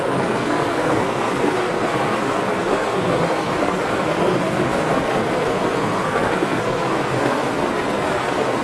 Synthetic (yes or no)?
yes